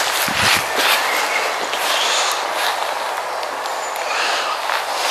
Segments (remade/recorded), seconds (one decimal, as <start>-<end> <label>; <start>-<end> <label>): 0.0-5.1 recorded